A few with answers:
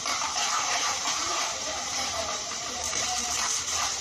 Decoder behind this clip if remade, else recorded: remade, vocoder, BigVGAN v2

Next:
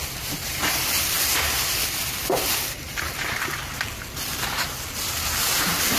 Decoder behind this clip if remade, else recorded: remade, vocoder, BigVGAN v2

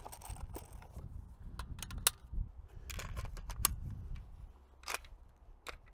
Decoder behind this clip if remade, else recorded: recorded